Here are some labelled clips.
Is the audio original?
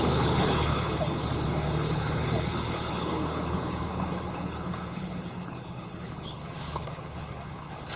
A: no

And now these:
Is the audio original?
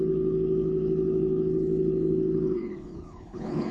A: no